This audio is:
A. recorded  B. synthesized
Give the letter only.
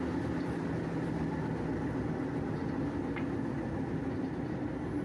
A